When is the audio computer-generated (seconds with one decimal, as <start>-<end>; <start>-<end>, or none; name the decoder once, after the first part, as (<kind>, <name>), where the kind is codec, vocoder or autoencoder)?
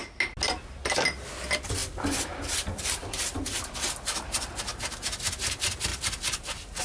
1.4-4.7 (vocoder, BigVGAN v2); 5.4-5.9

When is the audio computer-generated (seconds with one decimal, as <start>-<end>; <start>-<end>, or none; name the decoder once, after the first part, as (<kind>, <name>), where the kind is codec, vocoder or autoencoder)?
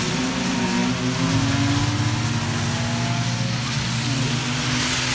none